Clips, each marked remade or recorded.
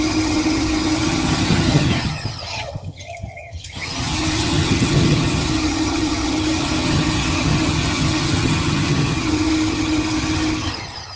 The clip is remade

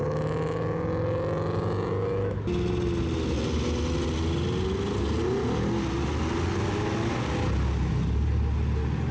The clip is recorded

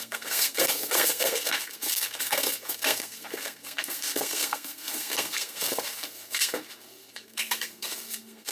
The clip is remade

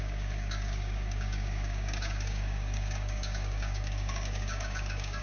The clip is remade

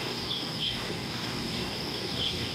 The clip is remade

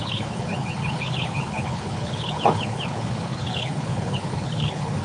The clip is remade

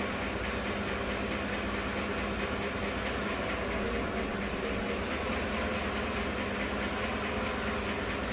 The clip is recorded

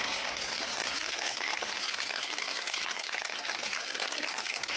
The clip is remade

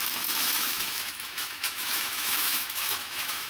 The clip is remade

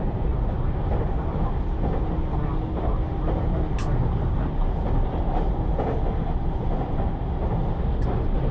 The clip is recorded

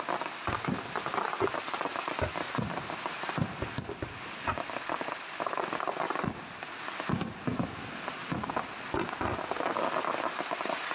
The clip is recorded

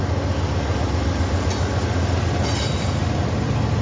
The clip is recorded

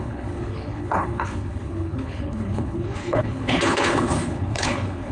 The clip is remade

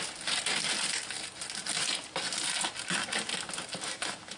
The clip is recorded